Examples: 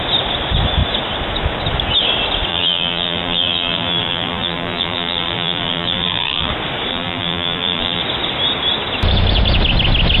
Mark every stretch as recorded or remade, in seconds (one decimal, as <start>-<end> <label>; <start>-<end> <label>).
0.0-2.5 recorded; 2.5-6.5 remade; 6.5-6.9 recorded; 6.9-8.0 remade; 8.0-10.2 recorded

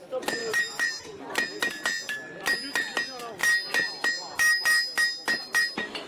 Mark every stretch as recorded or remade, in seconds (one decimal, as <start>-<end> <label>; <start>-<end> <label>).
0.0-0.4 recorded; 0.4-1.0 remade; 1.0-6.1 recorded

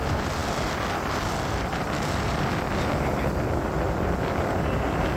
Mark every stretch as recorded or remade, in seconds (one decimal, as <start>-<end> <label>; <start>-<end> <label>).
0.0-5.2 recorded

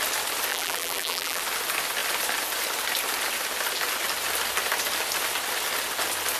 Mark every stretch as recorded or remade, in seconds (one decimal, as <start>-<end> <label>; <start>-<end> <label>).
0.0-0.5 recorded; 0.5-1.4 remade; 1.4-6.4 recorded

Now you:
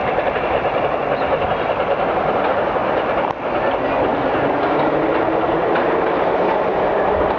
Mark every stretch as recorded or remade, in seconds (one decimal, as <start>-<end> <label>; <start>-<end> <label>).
0.0-1.0 remade; 1.0-2.8 recorded; 2.8-3.3 remade; 3.3-7.4 recorded

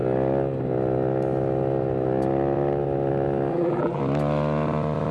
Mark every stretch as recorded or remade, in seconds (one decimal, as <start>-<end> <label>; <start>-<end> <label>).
0.0-3.5 recorded; 3.5-4.0 remade; 4.0-5.1 recorded